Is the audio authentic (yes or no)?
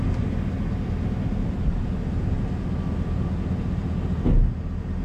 yes